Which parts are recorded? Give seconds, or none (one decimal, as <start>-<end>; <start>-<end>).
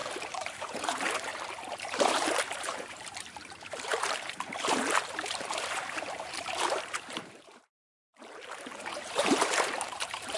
1.3-1.8